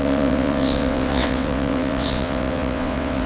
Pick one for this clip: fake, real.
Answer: fake